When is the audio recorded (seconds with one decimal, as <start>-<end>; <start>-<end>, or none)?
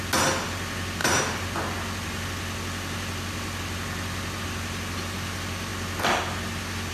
0.0-6.9